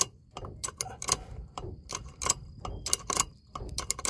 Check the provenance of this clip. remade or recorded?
remade